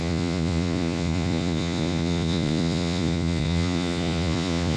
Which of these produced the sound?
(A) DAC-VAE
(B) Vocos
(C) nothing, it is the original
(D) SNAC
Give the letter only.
B